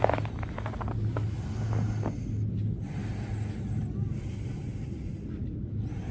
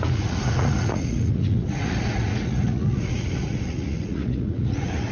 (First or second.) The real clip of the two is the first